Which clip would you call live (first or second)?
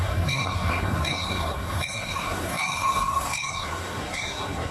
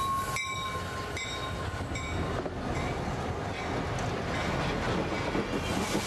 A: second